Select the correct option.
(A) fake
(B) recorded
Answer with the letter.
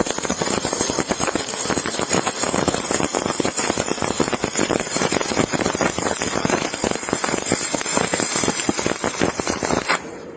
A